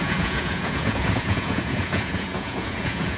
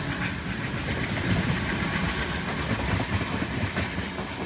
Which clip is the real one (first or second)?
second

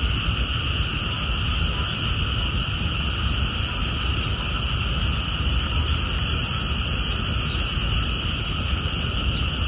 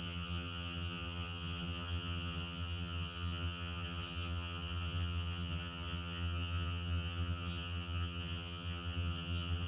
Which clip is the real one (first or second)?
first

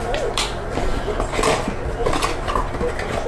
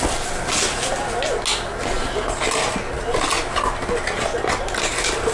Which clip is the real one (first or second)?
second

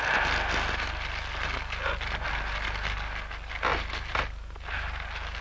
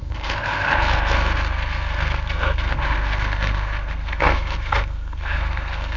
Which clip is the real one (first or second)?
first